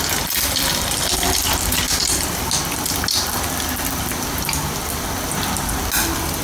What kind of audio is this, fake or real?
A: real